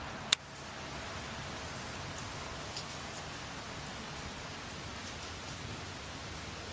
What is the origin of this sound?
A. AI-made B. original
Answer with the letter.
B